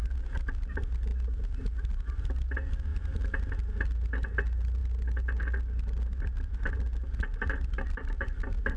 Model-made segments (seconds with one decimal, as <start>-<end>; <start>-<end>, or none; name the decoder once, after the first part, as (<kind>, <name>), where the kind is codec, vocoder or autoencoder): none